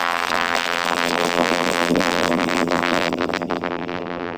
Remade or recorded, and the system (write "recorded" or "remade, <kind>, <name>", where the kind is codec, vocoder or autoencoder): remade, vocoder, BigVGAN v2